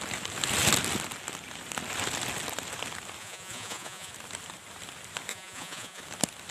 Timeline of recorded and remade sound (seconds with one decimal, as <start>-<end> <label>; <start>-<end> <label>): 0.0-3.2 recorded; 3.2-4.1 remade; 4.1-5.3 recorded; 5.3-6.0 remade; 6.0-6.5 recorded